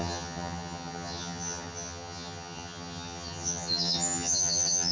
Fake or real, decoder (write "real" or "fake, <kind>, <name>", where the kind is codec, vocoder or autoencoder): fake, vocoder, HiFi-GAN